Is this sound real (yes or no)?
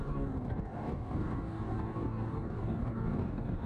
no